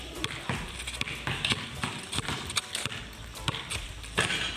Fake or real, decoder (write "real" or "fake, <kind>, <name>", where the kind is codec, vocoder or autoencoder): real